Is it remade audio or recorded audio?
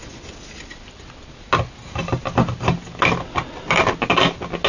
recorded